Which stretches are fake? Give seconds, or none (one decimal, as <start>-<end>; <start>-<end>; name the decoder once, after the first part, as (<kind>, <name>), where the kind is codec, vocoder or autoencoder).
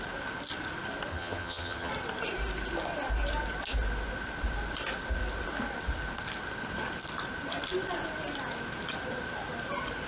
1.1-1.9 (vocoder, HiFi-GAN)